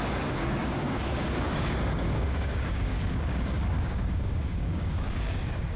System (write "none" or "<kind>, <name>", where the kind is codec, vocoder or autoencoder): codec, DAC